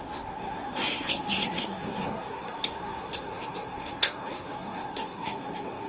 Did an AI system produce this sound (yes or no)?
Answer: yes